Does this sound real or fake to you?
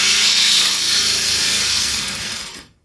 fake